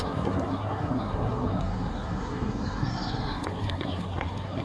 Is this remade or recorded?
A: remade